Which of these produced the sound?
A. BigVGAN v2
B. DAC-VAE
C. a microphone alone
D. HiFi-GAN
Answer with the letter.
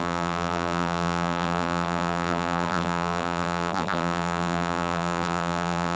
A